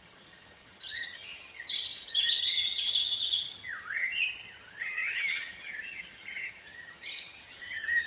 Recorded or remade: remade